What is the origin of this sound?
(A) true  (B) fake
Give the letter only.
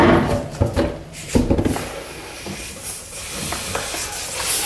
A